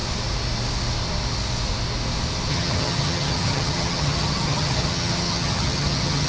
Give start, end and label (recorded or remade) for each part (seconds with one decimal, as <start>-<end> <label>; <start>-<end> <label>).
0.0-2.5 recorded; 2.5-6.3 remade